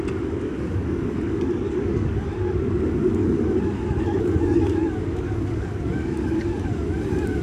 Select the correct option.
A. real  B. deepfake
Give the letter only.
B